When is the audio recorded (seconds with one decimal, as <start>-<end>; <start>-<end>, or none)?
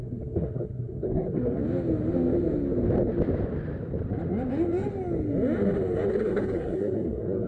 1.6-6.1